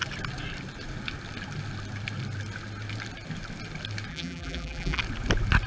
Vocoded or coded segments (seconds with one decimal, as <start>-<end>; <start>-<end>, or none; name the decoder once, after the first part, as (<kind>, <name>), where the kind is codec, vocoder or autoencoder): 4.1-5.0 (vocoder, BigVGAN v2)